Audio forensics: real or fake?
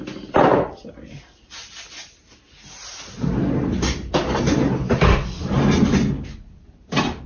real